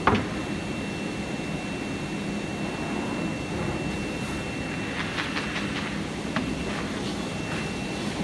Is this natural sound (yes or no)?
yes